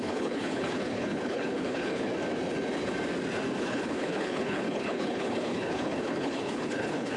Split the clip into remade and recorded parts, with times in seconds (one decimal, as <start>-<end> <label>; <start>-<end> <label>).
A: 0.0-2.1 remade; 2.1-3.6 recorded; 3.6-7.2 remade